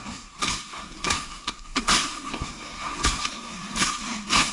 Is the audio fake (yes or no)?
yes